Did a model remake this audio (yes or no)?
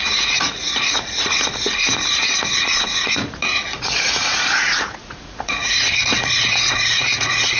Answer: yes